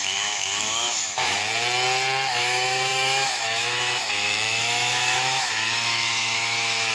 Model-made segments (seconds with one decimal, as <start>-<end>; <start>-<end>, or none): 0.0-1.4; 2.3-6.9